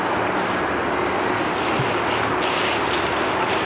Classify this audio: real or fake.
real